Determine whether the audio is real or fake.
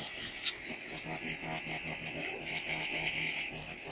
real